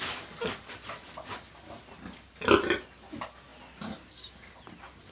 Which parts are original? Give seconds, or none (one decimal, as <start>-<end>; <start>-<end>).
0.0-5.1